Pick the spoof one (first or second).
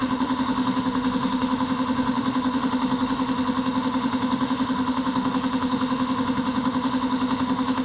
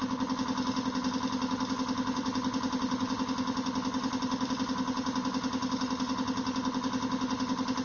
first